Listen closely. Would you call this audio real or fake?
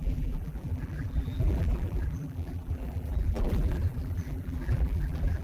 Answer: fake